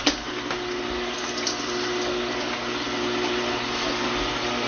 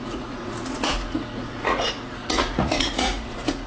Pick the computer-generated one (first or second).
second